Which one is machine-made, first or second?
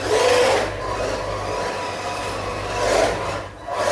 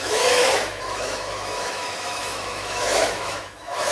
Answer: second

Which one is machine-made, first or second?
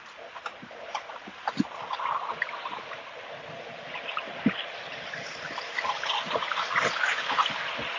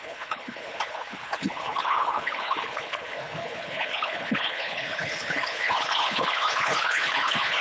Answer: second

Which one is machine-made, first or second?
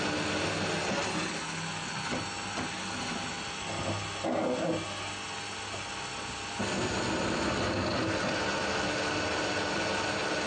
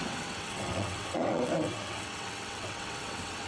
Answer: second